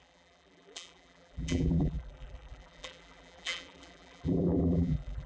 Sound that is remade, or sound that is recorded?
remade